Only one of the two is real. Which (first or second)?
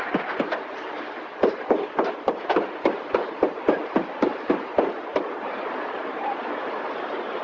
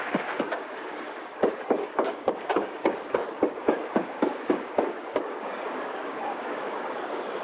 first